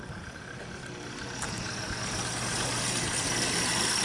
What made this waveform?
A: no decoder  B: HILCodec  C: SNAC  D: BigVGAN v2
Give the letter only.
A